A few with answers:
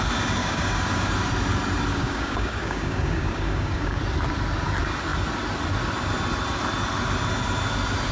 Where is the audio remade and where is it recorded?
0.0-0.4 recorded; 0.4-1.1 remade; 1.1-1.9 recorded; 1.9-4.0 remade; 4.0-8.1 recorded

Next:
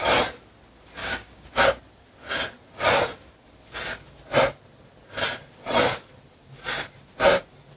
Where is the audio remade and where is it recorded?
0.0-1.0 recorded; 1.0-1.8 remade; 1.8-7.8 recorded

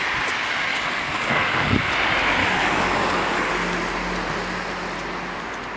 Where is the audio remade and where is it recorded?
0.0-0.7 recorded; 0.7-1.9 remade; 1.9-2.4 recorded; 2.4-3.5 remade; 3.5-5.8 recorded